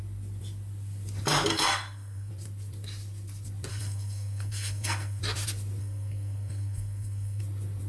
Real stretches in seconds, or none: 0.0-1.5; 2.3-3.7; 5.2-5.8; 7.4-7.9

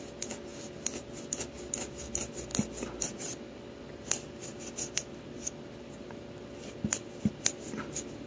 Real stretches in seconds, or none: 0.0-8.3

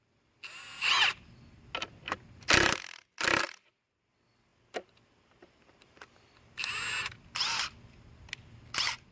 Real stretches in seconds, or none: 0.0-9.1

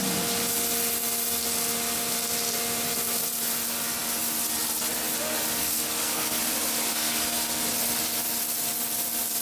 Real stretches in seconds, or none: 0.0-5.6; 6.4-6.9; 7.6-9.4

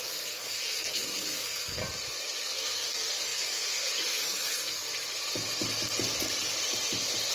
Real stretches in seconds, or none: 1.8-2.4; 4.9-7.3

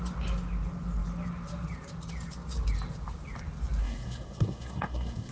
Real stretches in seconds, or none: 0.0-3.8